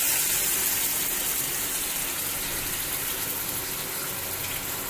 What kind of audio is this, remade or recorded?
recorded